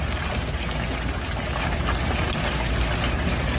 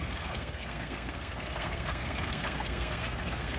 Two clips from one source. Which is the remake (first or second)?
second